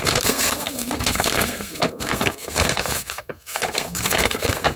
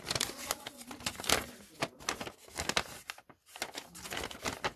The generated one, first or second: first